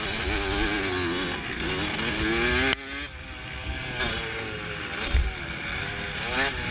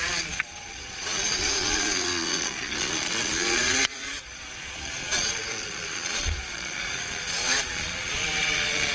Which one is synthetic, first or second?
second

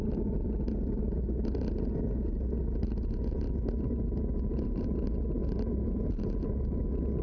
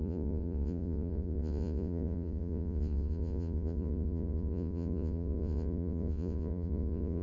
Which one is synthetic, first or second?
second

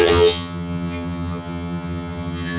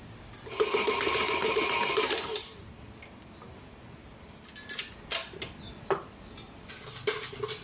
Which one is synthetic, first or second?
first